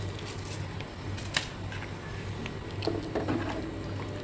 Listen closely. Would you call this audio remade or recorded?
recorded